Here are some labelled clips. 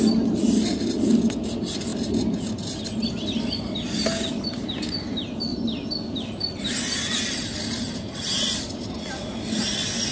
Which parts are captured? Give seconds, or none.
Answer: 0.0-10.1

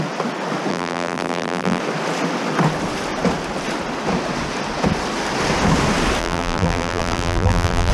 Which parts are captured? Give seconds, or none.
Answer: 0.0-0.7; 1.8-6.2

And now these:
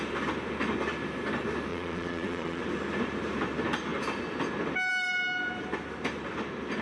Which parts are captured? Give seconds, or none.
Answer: 0.0-1.7; 2.6-6.8

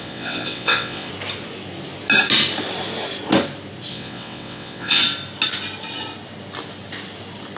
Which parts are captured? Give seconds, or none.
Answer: 1.1-3.9; 5.0-7.6

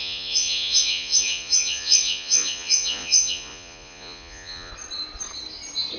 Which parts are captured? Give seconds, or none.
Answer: 4.7-6.0

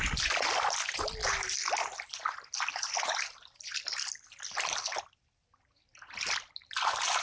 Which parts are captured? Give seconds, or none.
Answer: 0.0-7.2

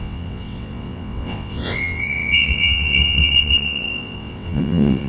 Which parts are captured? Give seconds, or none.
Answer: none